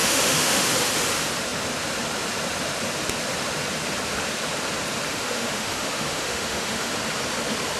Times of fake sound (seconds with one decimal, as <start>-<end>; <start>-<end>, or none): 0.0-0.7; 5.1-6.9